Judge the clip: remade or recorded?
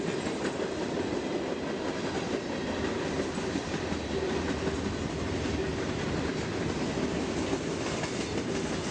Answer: recorded